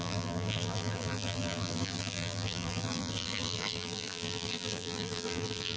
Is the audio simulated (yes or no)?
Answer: yes